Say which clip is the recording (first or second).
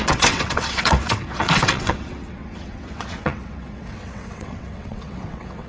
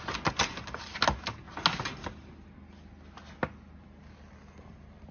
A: second